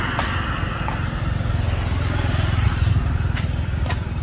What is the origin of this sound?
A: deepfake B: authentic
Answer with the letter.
B